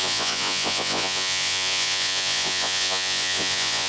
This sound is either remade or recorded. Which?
remade